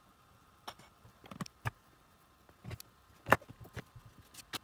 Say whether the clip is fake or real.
real